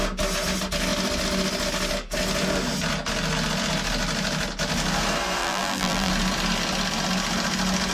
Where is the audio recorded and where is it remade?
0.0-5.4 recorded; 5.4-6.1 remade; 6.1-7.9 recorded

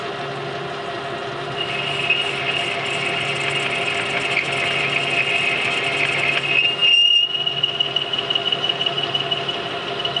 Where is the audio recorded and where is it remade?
0.0-10.2 recorded